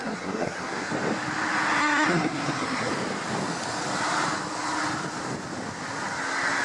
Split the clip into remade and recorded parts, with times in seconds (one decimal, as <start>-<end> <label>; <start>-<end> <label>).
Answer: 0.0-0.9 remade; 0.9-1.8 recorded; 1.8-2.9 remade; 2.9-6.6 recorded